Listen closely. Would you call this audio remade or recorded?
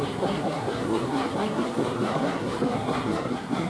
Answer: remade